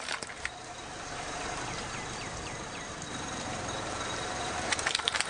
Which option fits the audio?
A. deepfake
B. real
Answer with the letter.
A